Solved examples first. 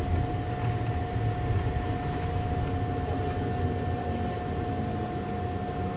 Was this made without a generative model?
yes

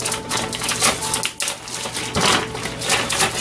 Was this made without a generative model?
yes